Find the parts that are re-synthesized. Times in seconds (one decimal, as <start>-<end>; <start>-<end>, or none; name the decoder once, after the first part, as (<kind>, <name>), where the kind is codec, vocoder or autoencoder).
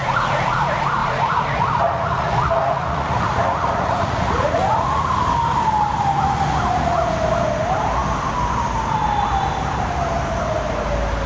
0.0-0.6 (vocoder, Vocos); 1.0-5.0